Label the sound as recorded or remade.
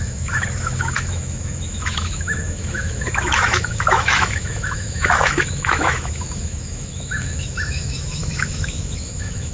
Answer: remade